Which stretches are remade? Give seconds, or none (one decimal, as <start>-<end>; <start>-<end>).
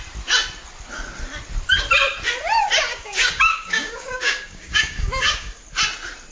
2.9-5.6